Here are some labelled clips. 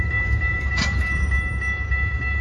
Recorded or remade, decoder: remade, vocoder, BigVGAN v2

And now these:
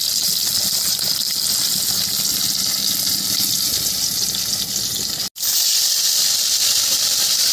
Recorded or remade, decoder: recorded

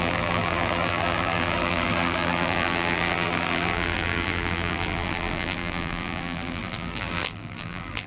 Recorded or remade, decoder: remade, vocoder, BigVGAN v2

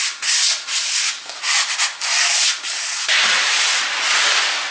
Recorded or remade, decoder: recorded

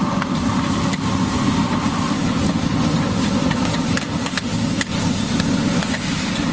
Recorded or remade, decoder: recorded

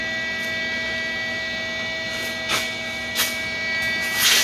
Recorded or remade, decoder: recorded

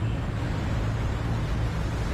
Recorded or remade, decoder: recorded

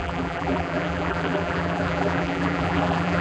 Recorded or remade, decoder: remade, vocoder, BigVGAN v2